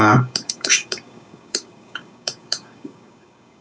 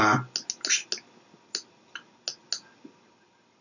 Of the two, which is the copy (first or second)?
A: first